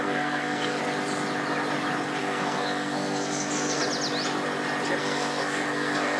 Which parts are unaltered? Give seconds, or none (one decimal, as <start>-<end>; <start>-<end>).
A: 0.8-2.2; 3.8-5.0